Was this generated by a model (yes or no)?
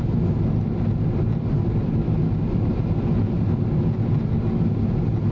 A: no